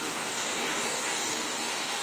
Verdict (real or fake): fake